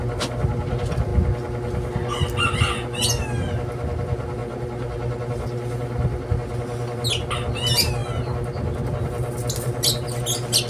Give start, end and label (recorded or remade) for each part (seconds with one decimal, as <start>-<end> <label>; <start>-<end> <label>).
0.0-10.7 recorded